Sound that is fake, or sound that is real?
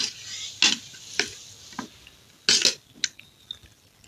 real